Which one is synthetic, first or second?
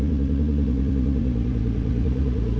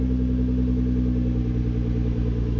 first